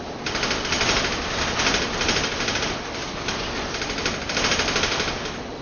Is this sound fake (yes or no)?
no